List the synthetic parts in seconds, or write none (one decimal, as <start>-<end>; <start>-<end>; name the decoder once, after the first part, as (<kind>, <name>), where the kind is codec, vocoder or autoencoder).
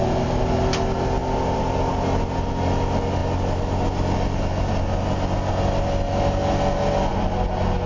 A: none